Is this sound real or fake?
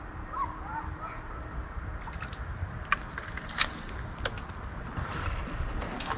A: real